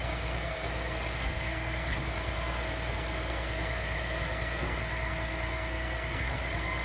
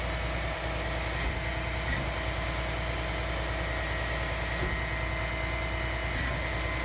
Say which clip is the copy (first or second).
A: first